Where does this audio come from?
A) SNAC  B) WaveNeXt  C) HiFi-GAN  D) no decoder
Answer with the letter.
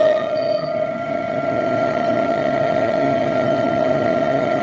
C